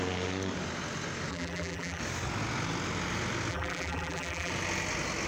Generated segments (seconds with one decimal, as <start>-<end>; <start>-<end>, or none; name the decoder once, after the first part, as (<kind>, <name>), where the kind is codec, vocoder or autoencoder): 1.3-2.0 (vocoder, BigVGAN v2); 3.5-4.5